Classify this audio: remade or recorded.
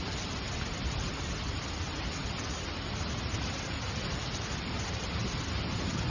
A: recorded